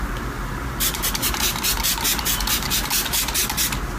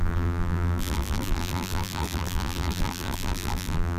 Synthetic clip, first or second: second